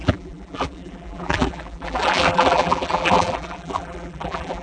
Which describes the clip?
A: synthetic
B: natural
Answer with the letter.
A